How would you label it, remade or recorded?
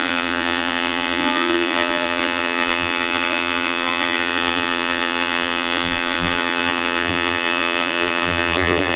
remade